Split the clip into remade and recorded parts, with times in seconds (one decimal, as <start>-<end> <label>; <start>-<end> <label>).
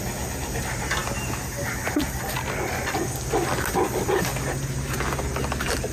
0.0-5.9 recorded